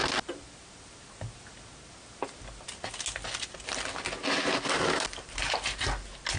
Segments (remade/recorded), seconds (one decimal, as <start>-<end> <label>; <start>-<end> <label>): 0.0-6.4 recorded